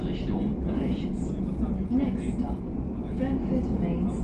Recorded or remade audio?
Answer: recorded